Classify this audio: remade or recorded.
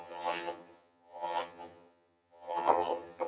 remade